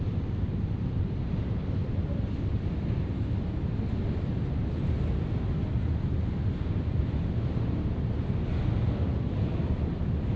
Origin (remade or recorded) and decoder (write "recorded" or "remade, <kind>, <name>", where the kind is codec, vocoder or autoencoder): recorded